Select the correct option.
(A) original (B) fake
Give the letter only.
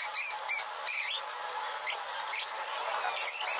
A